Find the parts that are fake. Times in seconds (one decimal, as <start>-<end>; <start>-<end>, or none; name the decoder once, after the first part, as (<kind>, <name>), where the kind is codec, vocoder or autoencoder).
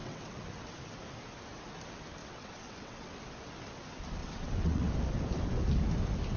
0.0-0.5 (vocoder, WaveNeXt); 2.2-3.1; 4.2-4.9